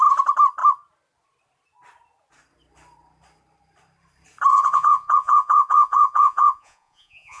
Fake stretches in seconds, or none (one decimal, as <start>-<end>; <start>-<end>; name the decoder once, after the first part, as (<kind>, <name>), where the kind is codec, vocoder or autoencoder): 4.5-7.4 (vocoder, Vocos)

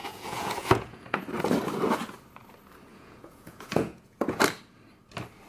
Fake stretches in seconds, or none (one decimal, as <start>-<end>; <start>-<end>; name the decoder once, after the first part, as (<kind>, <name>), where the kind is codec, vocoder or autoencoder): 0.0-1.2 (vocoder, Vocos); 2.9-4.4